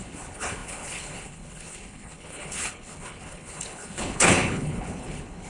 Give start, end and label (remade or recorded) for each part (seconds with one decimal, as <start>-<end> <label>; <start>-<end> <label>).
0.0-5.5 remade